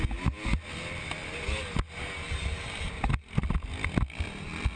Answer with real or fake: real